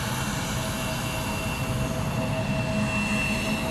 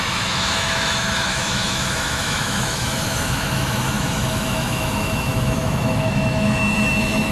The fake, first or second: second